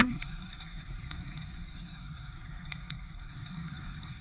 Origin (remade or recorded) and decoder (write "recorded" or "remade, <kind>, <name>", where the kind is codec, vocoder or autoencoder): remade, codec, SNAC